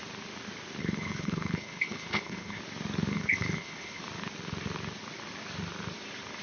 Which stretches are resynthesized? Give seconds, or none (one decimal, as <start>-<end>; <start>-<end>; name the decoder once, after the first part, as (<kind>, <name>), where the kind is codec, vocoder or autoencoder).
0.8-2.6 (codec, HILCodec); 3.1-4.0